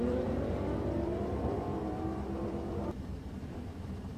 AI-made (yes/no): yes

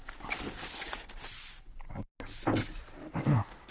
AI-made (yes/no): no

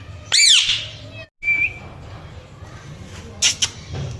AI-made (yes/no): no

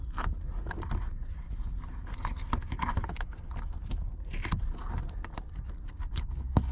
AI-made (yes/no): no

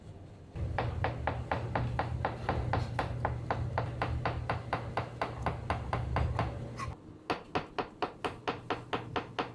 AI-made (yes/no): no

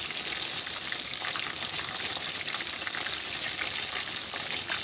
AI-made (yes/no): no